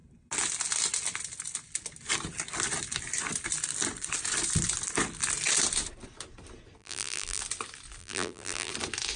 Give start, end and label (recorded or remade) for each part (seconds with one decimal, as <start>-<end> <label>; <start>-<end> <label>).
0.0-6.8 recorded; 6.8-7.4 remade; 7.4-8.0 recorded; 8.0-8.7 remade; 8.7-9.2 recorded